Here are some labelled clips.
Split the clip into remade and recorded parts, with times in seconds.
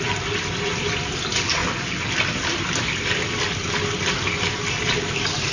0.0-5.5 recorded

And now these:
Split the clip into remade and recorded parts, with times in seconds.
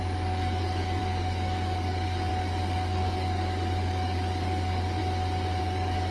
0.0-5.0 remade; 5.0-5.6 recorded; 5.6-6.1 remade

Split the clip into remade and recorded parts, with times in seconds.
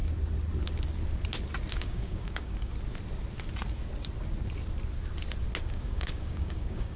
0.0-1.7 recorded; 1.7-2.7 remade; 2.7-5.7 recorded; 5.7-7.0 remade